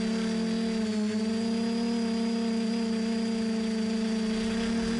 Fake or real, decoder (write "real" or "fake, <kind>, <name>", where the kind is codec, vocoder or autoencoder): real